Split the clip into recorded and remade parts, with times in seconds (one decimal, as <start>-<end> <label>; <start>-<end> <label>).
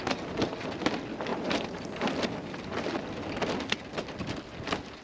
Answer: 0.0-1.3 recorded; 1.3-2.1 remade; 2.1-5.0 recorded